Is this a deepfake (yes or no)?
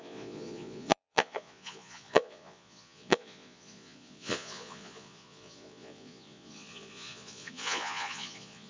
yes